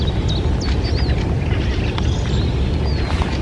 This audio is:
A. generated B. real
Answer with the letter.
B